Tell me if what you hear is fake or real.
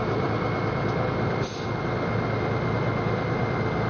real